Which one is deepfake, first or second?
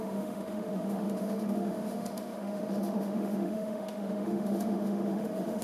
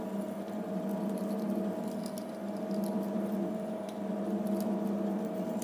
first